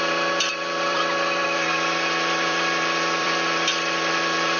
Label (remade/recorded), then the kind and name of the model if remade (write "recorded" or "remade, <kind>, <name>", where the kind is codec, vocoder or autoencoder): remade, vocoder, BigVGAN v2